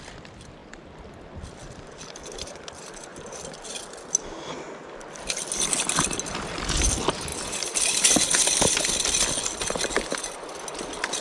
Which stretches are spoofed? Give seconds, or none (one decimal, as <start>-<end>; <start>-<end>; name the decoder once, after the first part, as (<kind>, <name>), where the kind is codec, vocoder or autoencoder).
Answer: 0.6-2.0 (vocoder, BigVGAN v2); 7.3-9.1